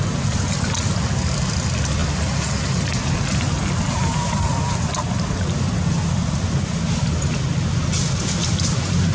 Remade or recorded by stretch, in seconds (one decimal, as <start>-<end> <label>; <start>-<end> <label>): 0.0-9.1 recorded

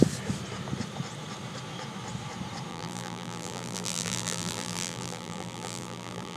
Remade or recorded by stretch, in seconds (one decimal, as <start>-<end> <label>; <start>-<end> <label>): 0.0-2.7 recorded; 2.7-6.4 remade

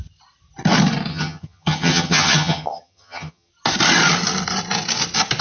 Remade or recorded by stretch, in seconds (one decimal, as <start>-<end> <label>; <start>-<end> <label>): 0.0-1.1 recorded; 1.1-3.5 remade; 3.5-5.4 recorded

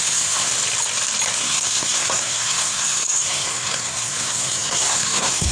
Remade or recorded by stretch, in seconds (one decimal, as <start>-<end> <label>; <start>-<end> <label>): 0.0-0.5 remade; 0.5-1.4 recorded; 1.4-5.5 remade